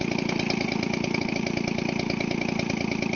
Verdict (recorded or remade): recorded